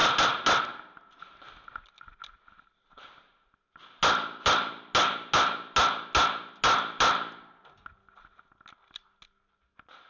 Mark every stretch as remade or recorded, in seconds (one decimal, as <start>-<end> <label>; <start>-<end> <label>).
0.0-10.1 recorded